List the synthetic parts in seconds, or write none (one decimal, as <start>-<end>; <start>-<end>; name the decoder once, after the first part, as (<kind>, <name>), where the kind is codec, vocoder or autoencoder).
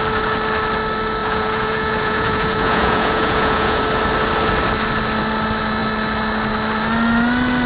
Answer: 1.2-3.8 (vocoder, Vocos)